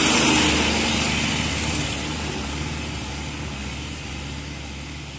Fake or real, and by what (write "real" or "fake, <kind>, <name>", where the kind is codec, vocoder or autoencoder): real